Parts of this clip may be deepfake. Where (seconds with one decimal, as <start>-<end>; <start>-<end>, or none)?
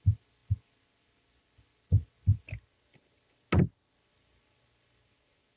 none